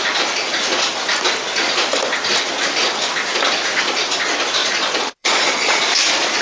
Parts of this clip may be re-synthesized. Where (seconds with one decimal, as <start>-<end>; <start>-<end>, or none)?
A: 4.6-5.8